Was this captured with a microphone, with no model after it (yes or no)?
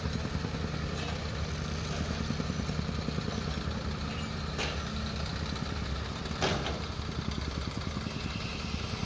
yes